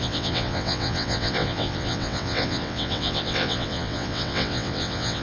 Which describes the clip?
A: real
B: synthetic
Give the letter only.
B